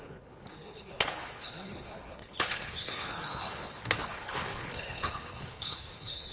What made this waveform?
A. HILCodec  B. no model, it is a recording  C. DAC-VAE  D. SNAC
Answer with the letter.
A